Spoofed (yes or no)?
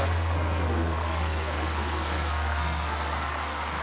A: yes